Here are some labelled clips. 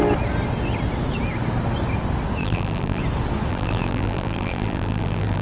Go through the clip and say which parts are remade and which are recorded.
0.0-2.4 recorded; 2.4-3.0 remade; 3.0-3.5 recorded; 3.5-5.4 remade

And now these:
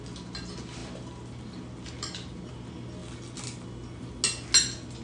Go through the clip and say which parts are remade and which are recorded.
0.0-5.0 recorded

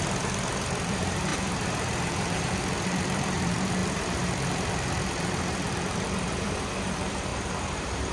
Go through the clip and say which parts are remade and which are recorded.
0.0-8.1 remade

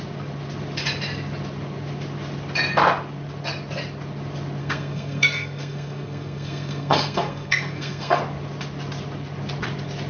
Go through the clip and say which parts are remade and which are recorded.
0.0-4.6 recorded; 4.6-8.2 remade; 8.2-10.1 recorded

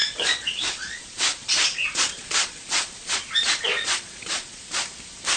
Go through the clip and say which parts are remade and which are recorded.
0.0-3.2 remade; 3.2-3.7 recorded; 3.7-4.7 remade; 4.7-5.4 recorded

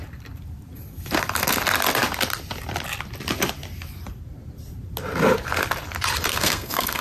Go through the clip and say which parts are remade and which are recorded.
0.0-6.3 recorded; 6.3-7.0 remade

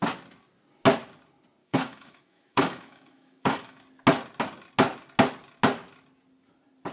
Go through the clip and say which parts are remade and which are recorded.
0.0-1.6 recorded; 1.6-3.8 remade; 3.8-6.9 recorded

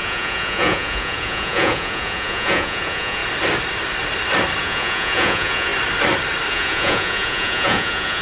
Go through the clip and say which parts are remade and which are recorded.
0.0-3.2 remade; 3.2-4.6 recorded; 4.6-5.7 remade; 5.7-6.5 recorded; 6.5-8.2 remade